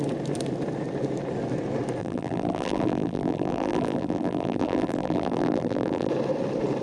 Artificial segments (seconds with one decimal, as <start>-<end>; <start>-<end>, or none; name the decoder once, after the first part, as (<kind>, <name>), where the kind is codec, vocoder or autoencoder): 2.0-6.1 (vocoder, BigVGAN v2)